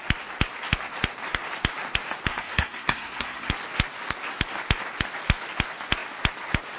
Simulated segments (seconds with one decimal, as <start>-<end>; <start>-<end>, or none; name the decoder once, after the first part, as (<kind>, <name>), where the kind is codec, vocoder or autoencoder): 2.3-3.5 (codec, SNAC)